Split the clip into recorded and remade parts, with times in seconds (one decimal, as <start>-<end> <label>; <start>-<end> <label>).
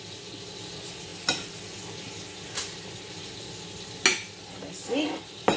0.0-5.6 recorded